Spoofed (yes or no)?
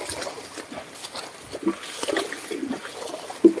no